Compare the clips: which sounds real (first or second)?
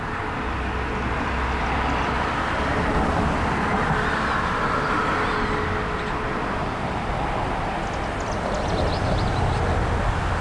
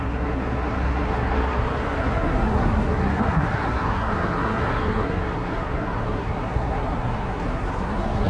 first